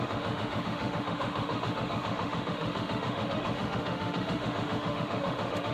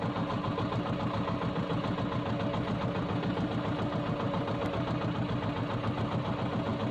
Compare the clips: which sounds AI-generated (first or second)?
first